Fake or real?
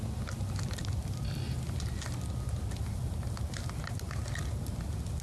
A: real